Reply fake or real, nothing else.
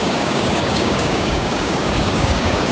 fake